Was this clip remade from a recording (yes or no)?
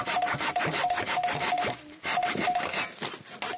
no